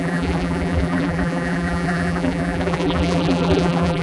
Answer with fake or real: fake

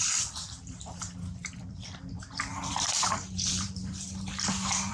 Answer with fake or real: fake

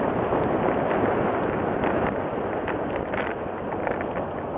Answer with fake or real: real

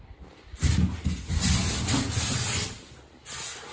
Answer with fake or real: real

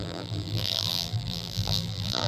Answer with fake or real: fake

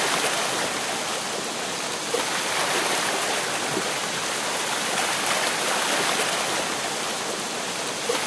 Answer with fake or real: real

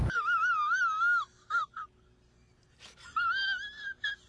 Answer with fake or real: real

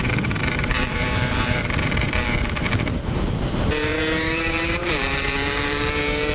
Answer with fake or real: fake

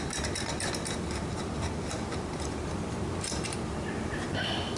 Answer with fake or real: real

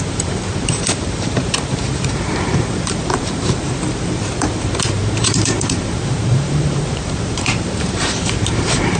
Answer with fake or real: fake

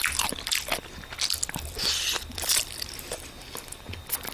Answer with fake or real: fake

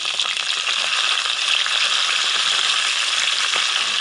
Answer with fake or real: real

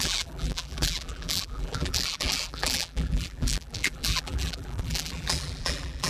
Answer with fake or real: fake